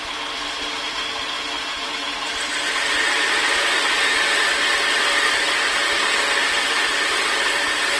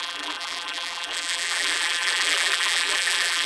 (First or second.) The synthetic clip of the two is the second